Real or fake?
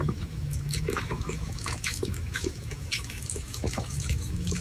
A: fake